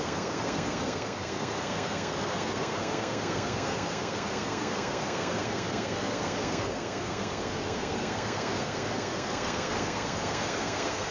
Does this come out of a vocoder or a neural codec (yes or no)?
yes